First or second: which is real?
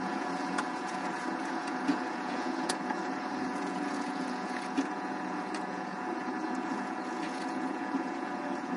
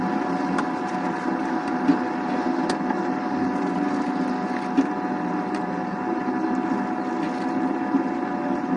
second